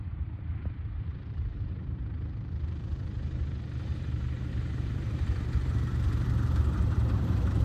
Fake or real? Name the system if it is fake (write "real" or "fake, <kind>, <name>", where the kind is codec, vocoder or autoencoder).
fake, vocoder, BigVGAN v2